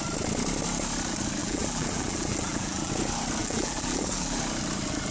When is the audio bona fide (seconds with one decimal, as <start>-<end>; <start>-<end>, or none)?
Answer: 0.0-1.4; 2.9-3.4; 4.4-5.1